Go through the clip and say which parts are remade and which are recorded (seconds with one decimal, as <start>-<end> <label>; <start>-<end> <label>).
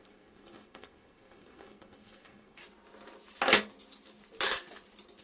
0.0-2.6 remade; 2.6-5.2 recorded